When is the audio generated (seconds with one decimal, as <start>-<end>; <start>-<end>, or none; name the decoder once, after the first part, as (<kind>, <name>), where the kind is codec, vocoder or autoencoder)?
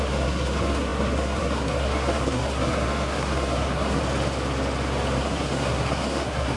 0.0-4.0 (codec, SNAC); 5.2-6.6